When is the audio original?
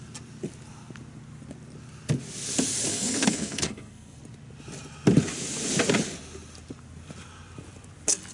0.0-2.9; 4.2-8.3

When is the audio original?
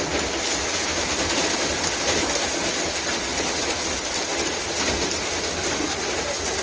0.0-0.9; 2.9-3.3; 4.9-6.6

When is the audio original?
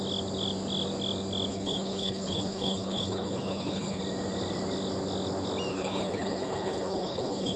0.0-1.5; 4.0-5.7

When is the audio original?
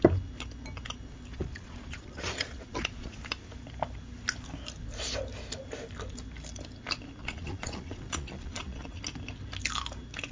0.0-1.3; 3.2-7.2; 9.0-10.3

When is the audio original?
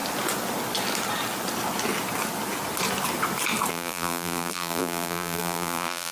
0.0-3.7